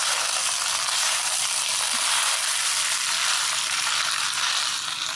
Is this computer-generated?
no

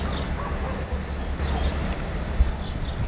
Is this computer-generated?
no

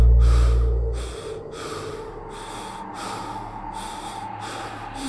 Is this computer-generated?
no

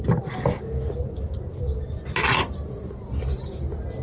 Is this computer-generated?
no